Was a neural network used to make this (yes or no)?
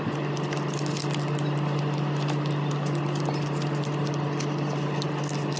no